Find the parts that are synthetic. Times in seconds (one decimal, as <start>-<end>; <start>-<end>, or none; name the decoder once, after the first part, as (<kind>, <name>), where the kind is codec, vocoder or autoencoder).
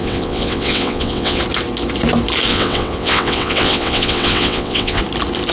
0.0-1.4 (vocoder, WaveNeXt); 2.5-5.0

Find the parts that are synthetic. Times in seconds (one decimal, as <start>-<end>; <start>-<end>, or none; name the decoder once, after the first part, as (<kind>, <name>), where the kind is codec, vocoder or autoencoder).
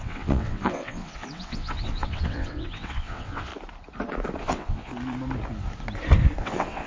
0.0-3.5 (vocoder, WaveNeXt); 4.4-4.9; 6.4-6.9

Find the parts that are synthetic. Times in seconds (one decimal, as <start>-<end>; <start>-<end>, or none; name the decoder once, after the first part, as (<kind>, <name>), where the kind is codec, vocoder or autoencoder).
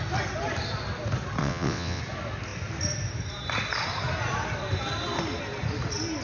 1.4-2.0 (vocoder, WaveNeXt)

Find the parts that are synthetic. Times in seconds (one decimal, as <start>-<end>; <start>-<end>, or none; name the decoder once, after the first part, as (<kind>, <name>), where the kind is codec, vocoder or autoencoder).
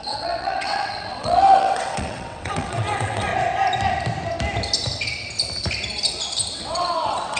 0.0-3.3 (vocoder, WaveNeXt); 6.5-7.4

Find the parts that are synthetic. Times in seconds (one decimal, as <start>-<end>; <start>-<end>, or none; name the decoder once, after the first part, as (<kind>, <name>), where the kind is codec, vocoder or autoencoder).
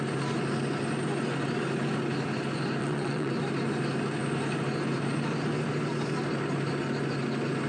2.8-3.3 (vocoder, WaveNeXt)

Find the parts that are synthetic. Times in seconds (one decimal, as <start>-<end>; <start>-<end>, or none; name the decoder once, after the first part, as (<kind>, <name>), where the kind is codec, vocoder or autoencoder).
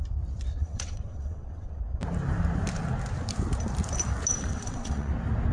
0.6-1.8 (vocoder, WaveNeXt); 4.3-5.1